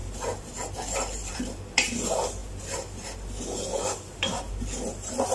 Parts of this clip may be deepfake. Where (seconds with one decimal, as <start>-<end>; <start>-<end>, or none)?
1.3-5.3

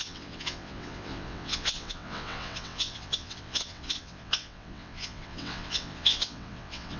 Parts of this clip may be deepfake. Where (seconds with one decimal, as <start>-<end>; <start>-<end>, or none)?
0.0-7.0

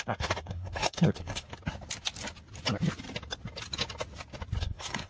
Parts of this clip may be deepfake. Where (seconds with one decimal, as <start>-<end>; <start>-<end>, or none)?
0.0-1.5; 4.6-5.1

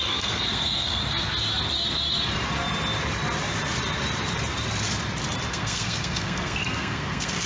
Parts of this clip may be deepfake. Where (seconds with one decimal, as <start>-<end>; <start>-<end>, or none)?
0.0-1.0; 5.5-7.5

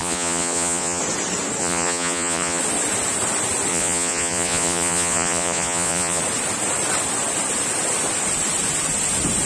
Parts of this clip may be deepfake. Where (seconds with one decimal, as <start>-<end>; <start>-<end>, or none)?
0.0-1.0; 1.6-2.6; 3.7-6.2

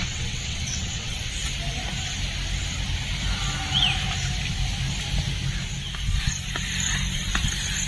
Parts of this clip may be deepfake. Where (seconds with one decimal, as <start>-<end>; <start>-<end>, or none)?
0.0-1.3